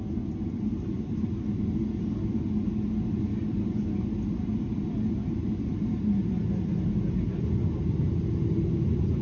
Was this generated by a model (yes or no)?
no